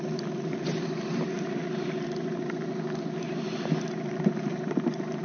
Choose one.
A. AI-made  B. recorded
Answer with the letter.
B